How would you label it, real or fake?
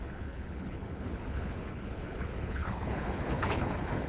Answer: fake